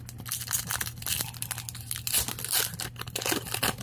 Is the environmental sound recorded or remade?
recorded